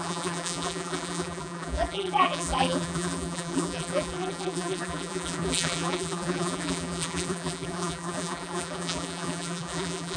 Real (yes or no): no